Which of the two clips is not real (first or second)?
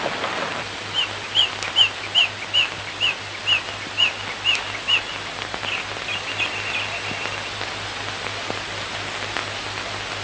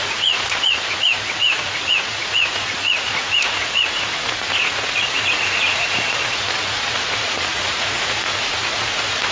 second